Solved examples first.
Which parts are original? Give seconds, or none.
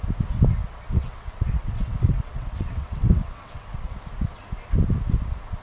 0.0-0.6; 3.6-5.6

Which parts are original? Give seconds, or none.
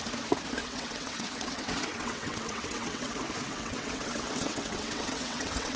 0.0-0.6; 3.1-3.5